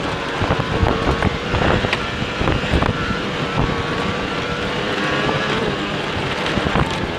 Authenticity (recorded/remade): remade